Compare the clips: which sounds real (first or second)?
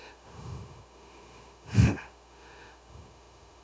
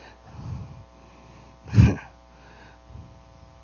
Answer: second